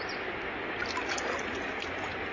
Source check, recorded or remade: recorded